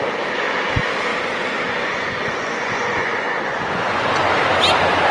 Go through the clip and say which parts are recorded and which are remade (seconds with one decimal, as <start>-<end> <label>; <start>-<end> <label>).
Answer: 0.0-1.1 recorded; 1.1-4.2 remade; 4.2-5.1 recorded